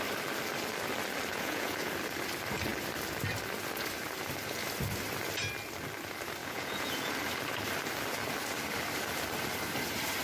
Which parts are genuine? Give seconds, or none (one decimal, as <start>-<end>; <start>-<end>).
0.0-1.3; 1.9-6.4; 7.1-10.2